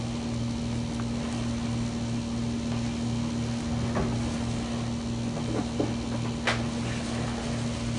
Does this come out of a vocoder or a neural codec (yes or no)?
no